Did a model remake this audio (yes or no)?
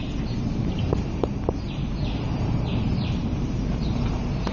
yes